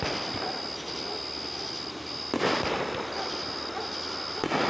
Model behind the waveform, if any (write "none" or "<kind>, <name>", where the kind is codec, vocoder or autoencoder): none